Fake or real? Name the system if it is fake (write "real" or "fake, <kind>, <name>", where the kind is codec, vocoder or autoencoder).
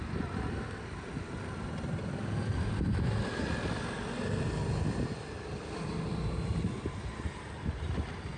real